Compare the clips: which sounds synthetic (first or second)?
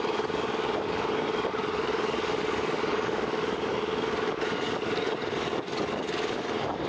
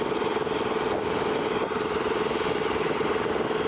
first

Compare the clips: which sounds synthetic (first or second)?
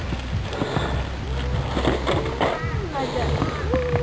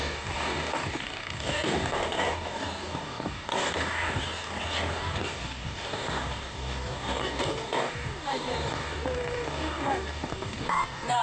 second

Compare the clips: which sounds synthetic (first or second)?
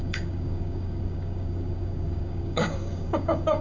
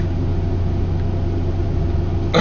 first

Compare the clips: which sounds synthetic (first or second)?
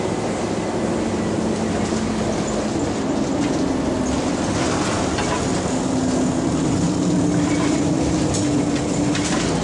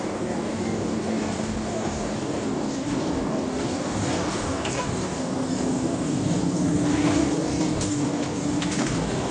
second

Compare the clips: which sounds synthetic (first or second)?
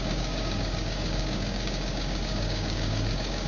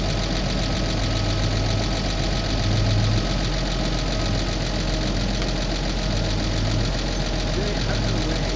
first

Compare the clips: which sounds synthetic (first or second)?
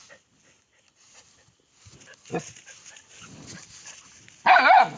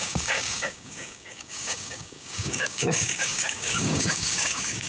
second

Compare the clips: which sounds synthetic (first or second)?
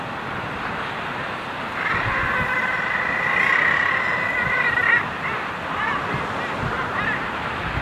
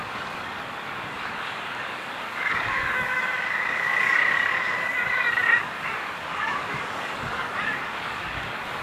second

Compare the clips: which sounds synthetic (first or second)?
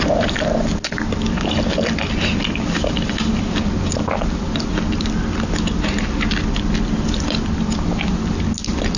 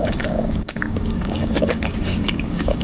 second